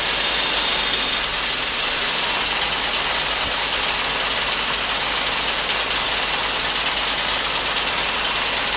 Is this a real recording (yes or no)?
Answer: yes